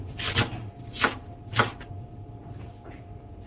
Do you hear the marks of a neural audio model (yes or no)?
yes